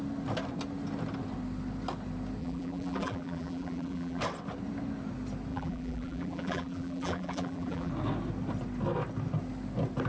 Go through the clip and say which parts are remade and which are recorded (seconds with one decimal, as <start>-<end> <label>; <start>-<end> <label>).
0.0-2.4 recorded; 2.4-4.2 remade; 4.2-5.5 recorded; 5.5-7.9 remade; 7.9-10.1 recorded